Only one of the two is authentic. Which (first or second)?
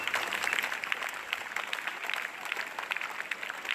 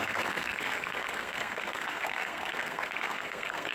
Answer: first